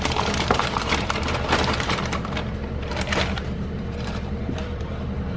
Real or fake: fake